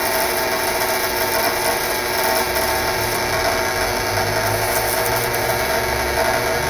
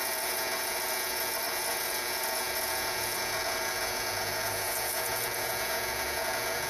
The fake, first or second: second